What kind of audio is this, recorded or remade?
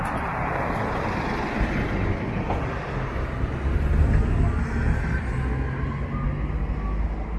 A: recorded